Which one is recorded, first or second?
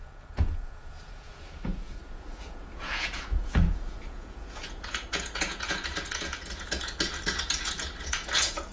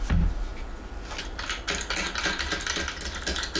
second